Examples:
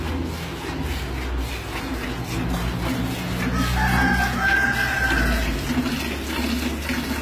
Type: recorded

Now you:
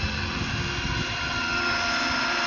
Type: recorded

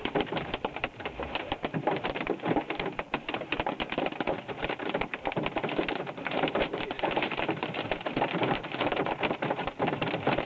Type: remade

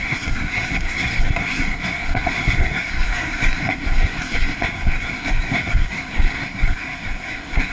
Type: remade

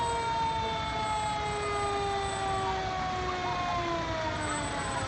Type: recorded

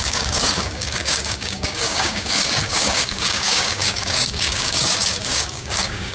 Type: remade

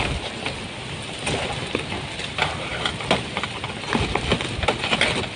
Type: recorded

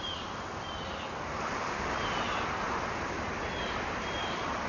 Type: recorded